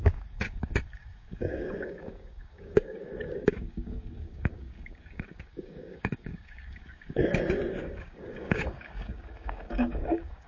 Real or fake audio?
fake